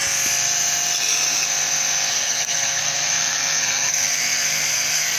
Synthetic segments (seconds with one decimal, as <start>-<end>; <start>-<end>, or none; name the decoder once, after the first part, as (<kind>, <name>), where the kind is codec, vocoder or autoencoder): 2.1-5.2 (codec, SNAC)